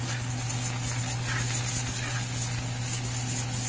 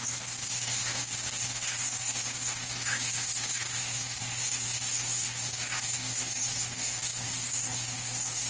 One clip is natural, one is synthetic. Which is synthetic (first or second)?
second